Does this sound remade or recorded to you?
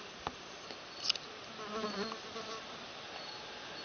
recorded